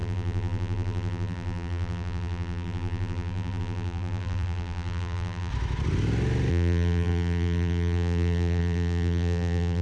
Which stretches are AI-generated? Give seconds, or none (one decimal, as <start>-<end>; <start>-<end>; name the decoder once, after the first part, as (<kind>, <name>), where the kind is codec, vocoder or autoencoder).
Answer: 0.0-5.5 (vocoder, BigVGAN v2); 6.5-9.8